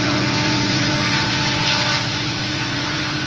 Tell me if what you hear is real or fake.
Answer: fake